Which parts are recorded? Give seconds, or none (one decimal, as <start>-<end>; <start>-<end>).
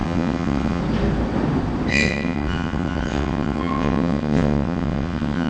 0.8-1.9